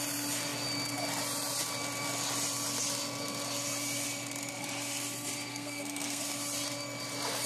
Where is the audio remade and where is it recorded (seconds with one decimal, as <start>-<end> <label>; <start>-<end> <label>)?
0.0-5.5 recorded; 5.5-6.2 remade; 6.2-7.5 recorded